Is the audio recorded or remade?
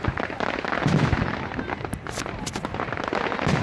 recorded